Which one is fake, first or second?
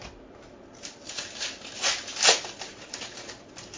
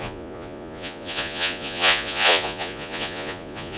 second